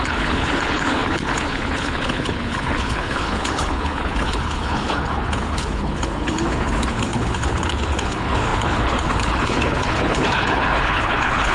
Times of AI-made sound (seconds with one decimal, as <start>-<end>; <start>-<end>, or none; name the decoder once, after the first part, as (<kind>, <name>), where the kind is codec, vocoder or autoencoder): 0.0-11.5 (codec, HILCodec)